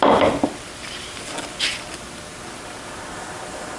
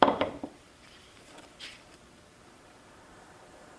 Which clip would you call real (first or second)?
first